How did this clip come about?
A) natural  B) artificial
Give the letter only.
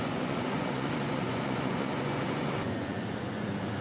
B